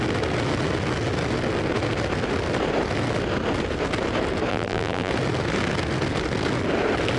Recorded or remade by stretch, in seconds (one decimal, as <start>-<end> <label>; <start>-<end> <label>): 0.0-4.5 recorded; 4.5-5.1 remade; 5.1-7.2 recorded